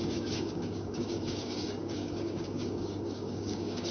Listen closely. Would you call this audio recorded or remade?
remade